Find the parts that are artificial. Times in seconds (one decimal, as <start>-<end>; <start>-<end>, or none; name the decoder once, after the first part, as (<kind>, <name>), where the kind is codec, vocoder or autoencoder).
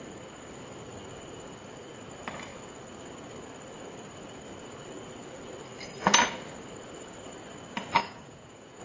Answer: 8.0-8.8 (vocoder, Vocos)